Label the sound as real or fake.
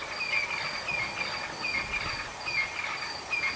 real